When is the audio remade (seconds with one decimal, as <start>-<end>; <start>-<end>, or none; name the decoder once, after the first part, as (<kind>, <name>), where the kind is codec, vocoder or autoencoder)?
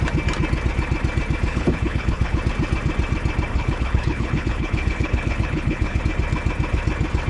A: 1.5-2.4 (codec, HILCodec); 3.5-6.0